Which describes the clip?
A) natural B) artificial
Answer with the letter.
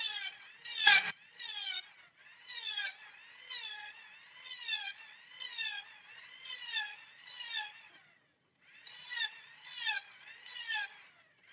B